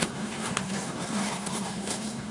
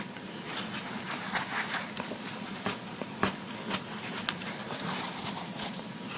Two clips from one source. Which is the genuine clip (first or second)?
second